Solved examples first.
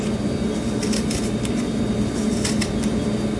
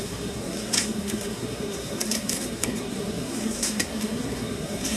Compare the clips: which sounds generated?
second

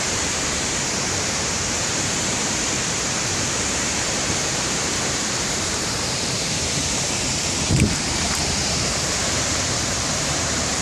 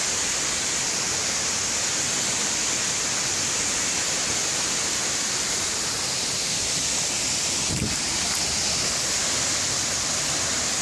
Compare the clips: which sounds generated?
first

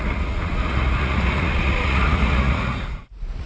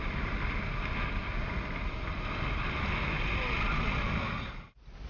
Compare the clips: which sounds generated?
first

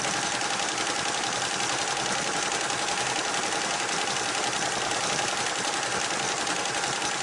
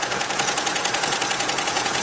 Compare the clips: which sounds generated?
second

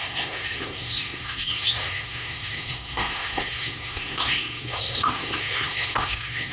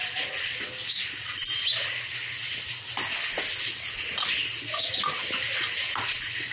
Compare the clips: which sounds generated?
first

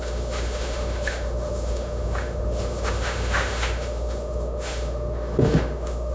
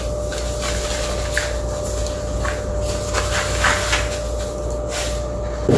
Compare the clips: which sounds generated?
first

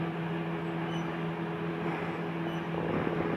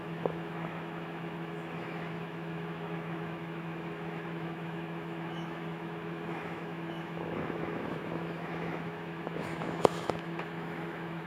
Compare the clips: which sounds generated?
second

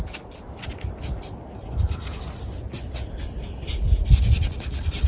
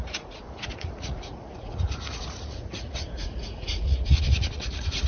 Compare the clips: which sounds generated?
second